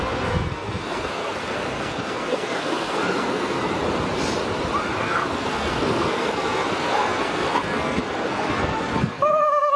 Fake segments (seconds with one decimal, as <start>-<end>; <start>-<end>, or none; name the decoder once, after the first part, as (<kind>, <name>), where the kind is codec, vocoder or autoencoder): 0.0-3.6 (codec, SNAC); 5.0-9.8